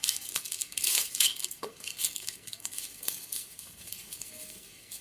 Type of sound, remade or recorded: remade